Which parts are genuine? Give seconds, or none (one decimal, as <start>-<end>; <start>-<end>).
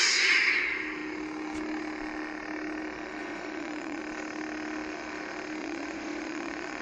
0.0-3.2; 4.0-5.6